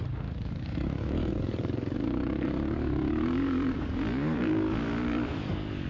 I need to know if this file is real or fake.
fake